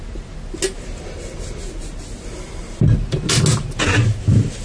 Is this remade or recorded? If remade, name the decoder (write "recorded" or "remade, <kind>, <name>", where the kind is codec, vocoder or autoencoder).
recorded